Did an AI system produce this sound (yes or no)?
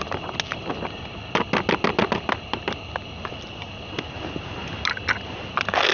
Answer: no